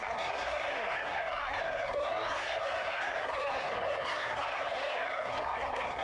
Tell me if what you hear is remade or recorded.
remade